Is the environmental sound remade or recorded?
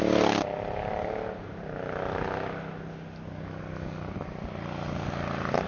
recorded